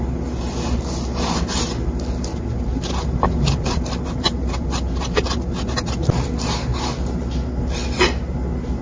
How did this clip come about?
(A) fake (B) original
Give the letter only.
B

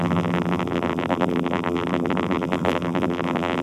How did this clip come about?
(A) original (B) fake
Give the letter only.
B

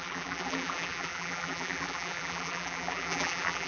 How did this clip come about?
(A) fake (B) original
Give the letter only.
A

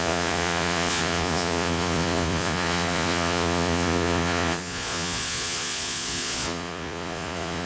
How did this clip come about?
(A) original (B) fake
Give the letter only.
B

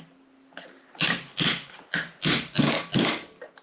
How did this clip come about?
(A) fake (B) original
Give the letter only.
B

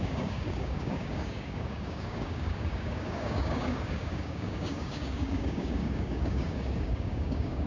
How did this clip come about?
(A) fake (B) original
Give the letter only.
A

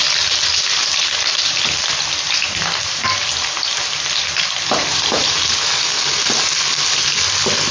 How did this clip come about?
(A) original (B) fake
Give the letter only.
A